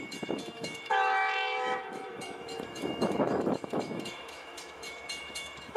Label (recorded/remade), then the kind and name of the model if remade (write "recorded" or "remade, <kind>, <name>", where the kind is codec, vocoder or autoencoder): remade, autoencoder, DAC-VAE